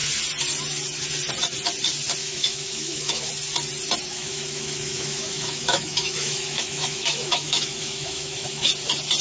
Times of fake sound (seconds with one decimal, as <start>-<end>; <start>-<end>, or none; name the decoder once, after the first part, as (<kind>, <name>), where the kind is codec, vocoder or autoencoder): 2.2-3.3 (autoencoder, DAC-VAE); 4.1-8.7